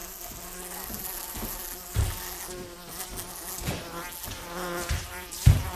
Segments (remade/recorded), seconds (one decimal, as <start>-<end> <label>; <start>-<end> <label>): 0.0-5.8 recorded